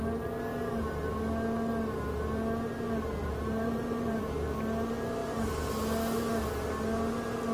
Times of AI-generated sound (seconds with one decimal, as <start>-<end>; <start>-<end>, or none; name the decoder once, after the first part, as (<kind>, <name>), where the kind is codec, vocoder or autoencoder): 3.2-4.2 (vocoder, BigVGAN v2); 5.2-5.7